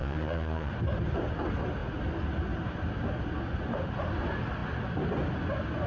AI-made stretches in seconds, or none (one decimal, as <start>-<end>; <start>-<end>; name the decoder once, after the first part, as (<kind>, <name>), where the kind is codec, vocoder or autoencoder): 0.0-0.7 (vocoder, Vocos)